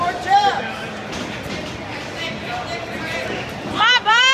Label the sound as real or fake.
fake